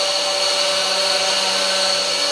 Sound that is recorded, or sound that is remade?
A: recorded